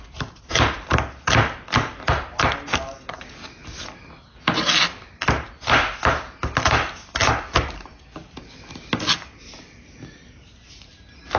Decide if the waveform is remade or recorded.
recorded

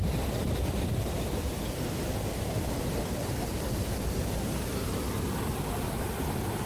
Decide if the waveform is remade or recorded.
recorded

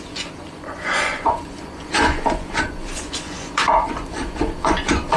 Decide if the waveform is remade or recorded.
remade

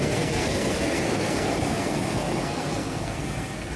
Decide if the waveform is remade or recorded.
remade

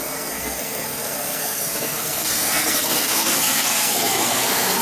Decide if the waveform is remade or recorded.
remade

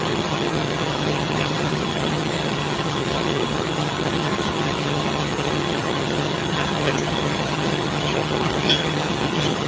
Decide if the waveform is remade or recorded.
remade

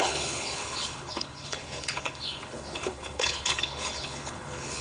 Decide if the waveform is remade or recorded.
remade